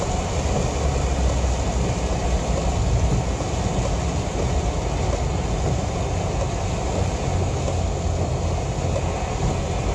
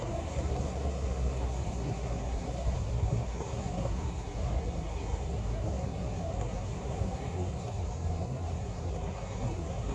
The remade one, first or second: second